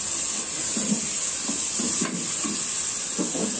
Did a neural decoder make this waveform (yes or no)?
no